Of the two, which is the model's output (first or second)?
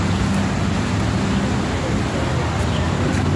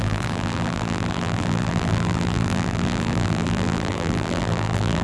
second